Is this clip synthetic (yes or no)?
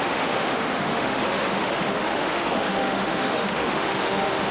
yes